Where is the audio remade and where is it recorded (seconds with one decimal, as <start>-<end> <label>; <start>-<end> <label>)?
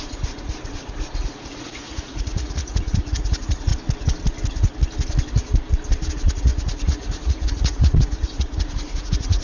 0.0-3.7 remade; 3.7-6.1 recorded; 6.1-9.4 remade